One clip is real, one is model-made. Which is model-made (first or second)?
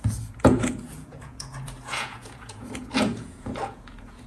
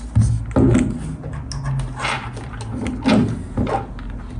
first